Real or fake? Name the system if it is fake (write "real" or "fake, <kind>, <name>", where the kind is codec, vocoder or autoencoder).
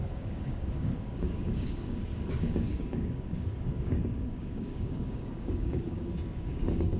fake, codec, DAC